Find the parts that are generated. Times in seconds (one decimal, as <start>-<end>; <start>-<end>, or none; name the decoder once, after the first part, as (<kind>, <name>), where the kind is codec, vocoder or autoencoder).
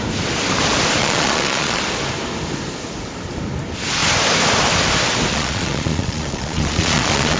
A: 1.0-1.8 (vocoder, Vocos); 5.3-7.4